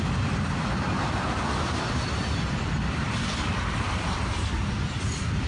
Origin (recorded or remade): remade